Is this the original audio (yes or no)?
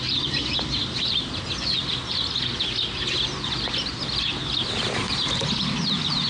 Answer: yes